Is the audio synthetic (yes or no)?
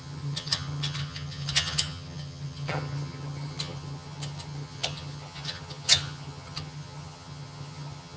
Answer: yes